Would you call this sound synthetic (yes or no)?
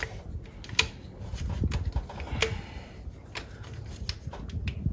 no